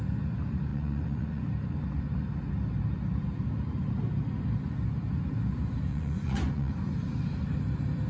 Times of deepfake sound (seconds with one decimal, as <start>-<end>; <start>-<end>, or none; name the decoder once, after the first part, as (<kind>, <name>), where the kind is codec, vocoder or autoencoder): 0.7-1.4 (vocoder, Vocos); 5.9-6.7